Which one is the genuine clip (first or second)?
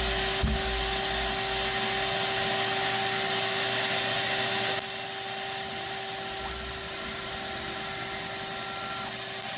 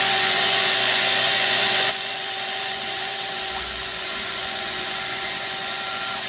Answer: first